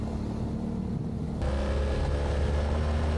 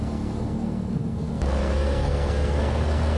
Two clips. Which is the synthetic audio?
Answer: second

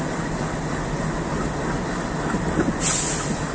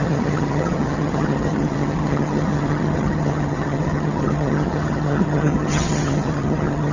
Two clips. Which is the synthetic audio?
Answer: second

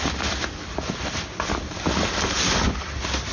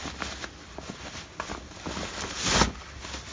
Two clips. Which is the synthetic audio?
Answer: first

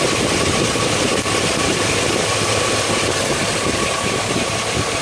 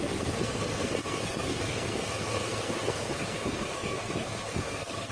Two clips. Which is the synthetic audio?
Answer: second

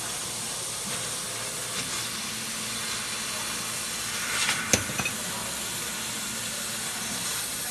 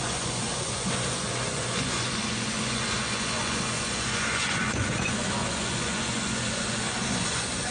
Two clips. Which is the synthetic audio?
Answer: second